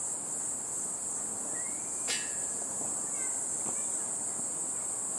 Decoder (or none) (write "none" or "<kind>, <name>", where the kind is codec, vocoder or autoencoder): none